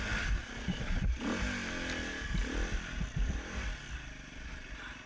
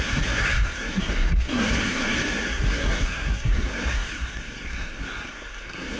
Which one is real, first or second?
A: first